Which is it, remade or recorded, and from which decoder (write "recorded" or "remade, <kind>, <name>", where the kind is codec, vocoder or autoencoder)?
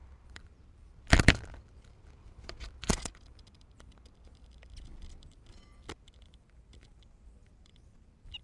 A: remade, vocoder, BigVGAN v2